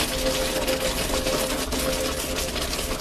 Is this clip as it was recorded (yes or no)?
yes